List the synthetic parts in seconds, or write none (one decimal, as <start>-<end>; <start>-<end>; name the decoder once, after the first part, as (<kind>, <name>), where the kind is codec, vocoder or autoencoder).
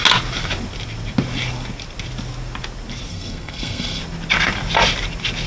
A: 3.1-4.0 (codec, SNAC)